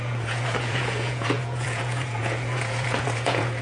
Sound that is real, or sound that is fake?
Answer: fake